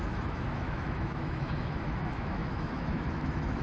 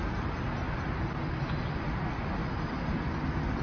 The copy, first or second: first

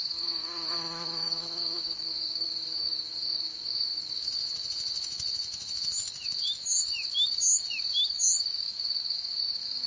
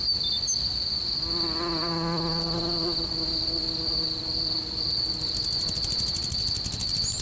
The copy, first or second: first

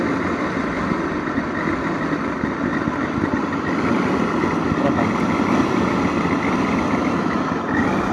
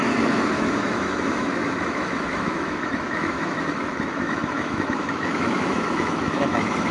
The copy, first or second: second